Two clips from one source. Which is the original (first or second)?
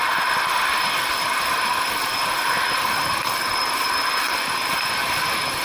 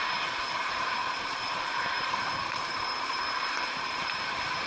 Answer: first